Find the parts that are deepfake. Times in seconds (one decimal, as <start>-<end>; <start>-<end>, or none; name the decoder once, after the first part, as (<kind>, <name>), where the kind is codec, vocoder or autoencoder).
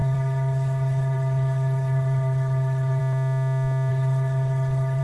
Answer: 0.0-3.0 (codec, HILCodec); 3.9-5.0